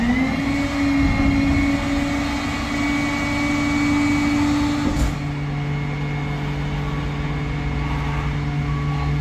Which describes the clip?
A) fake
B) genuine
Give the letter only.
B